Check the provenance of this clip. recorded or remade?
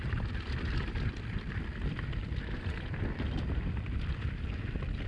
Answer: recorded